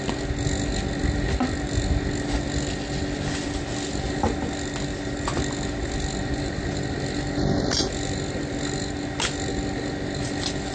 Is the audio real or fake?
real